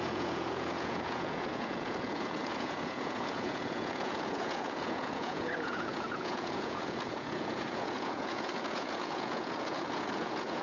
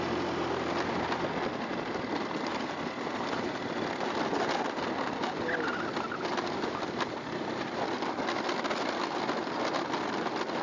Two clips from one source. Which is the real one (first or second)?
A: second